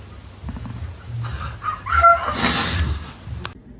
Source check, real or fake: real